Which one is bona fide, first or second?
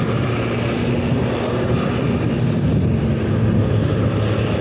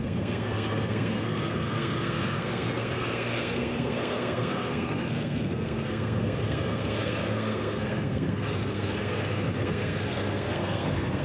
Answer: first